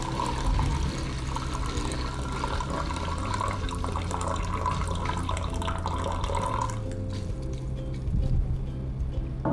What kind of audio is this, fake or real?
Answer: real